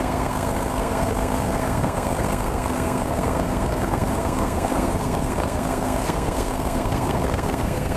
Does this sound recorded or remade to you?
remade